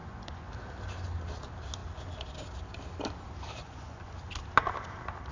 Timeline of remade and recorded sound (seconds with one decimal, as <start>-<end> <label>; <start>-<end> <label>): 0.0-0.5 remade; 0.5-3.6 recorded; 3.6-4.1 remade; 4.1-5.3 recorded